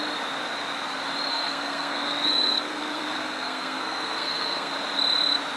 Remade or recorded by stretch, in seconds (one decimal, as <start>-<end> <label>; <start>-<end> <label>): 0.0-1.3 recorded; 1.3-4.7 remade; 4.7-5.6 recorded